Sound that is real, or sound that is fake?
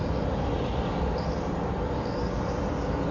real